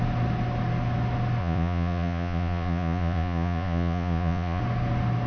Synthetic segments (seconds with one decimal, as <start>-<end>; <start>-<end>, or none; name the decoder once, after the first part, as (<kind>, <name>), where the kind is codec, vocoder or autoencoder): 1.4-4.6 (vocoder, Vocos)